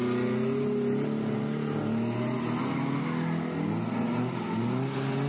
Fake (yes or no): no